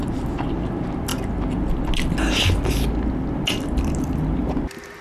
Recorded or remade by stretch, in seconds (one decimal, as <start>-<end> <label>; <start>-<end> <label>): 0.0-5.0 recorded